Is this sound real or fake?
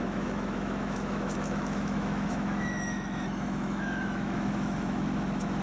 fake